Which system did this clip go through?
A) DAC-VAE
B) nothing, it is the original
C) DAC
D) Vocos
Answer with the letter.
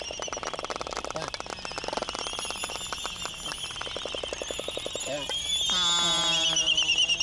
B